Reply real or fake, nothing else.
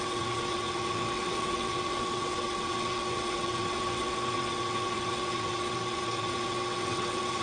fake